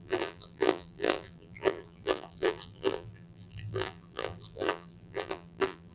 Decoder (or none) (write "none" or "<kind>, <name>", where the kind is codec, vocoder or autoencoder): vocoder, BigVGAN v2